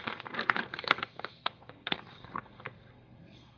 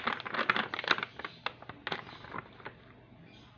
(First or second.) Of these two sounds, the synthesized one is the first